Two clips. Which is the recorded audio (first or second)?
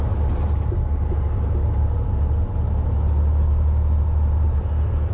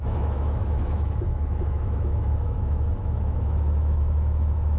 first